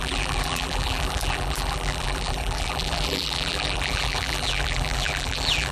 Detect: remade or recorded remade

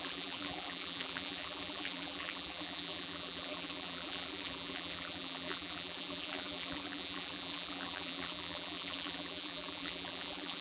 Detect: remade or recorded remade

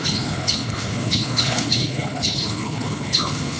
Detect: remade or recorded remade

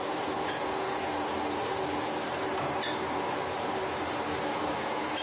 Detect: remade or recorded recorded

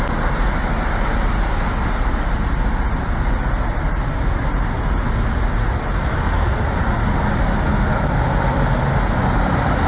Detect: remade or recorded recorded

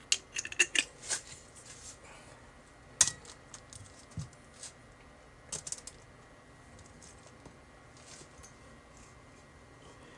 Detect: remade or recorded recorded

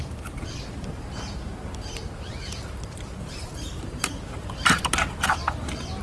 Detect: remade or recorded remade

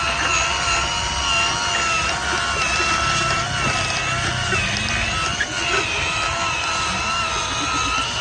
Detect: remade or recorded recorded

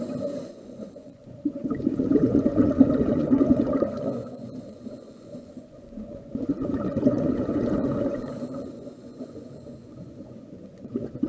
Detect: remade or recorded remade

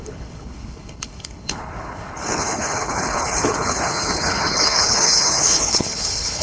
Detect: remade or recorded remade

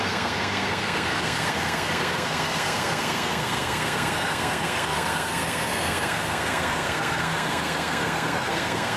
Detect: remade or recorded remade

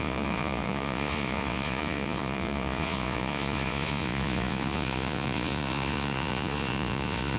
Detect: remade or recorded remade